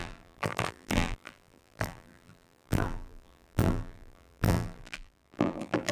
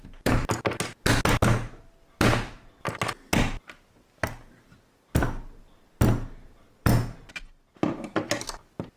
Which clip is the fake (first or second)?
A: first